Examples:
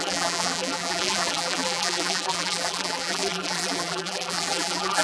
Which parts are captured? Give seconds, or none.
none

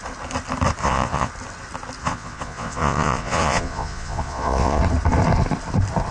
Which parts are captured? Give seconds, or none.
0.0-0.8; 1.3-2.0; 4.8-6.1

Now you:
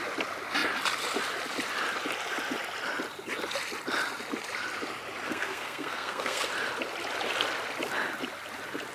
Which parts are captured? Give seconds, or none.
0.0-5.3; 6.5-8.9

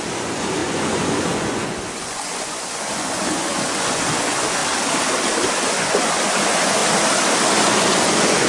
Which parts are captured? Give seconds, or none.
4.6-5.6; 6.8-7.5

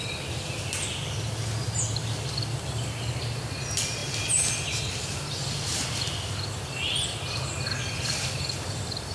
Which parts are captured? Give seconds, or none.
0.0-9.1

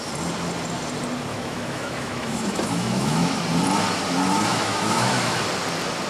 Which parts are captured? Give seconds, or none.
0.0-1.3; 3.4-4.5; 5.4-6.1

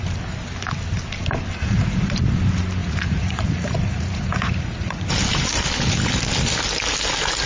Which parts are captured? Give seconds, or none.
0.0-1.6; 2.1-2.8; 5.1-7.5